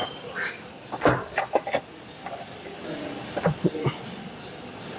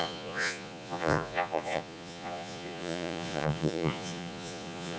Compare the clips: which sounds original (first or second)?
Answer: first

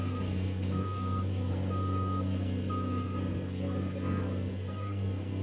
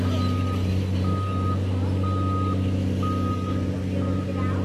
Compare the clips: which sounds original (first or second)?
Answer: second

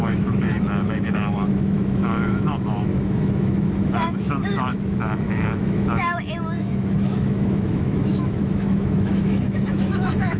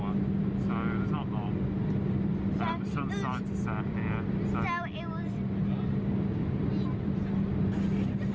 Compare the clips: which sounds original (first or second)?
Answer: second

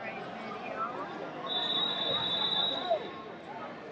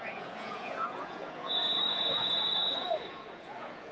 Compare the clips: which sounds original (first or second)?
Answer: first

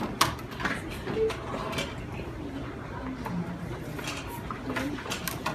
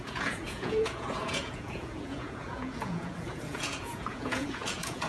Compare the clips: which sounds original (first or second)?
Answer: first